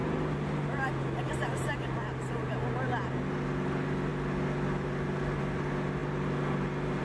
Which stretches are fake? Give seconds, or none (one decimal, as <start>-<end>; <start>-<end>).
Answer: none